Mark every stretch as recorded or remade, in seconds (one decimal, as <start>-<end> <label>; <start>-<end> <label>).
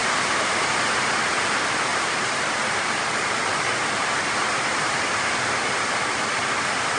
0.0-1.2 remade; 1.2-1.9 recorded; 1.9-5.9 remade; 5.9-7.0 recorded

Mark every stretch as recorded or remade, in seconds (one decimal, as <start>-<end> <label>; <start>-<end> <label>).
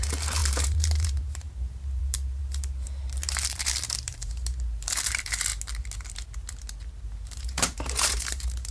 0.0-5.5 remade; 5.5-7.0 recorded; 7.0-8.7 remade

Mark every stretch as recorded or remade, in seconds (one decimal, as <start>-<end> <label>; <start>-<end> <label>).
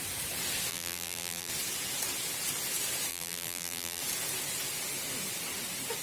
0.0-0.7 recorded; 0.7-1.5 remade; 1.5-3.1 recorded; 3.1-4.0 remade; 4.0-6.0 recorded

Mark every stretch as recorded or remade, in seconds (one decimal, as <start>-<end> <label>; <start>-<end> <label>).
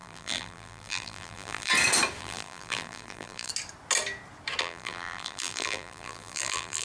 0.0-1.7 remade; 1.7-2.2 recorded; 2.2-3.5 remade; 3.5-4.6 recorded; 4.6-6.8 remade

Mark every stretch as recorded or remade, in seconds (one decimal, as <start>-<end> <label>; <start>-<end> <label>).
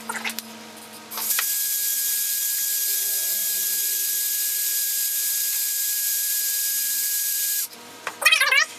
0.0-3.4 recorded; 3.4-7.6 remade; 7.6-8.8 recorded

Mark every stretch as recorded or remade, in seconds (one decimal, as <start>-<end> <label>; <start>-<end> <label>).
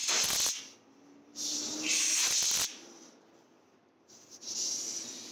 0.0-5.3 recorded